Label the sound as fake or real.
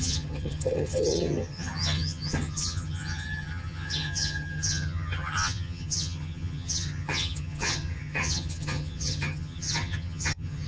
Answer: fake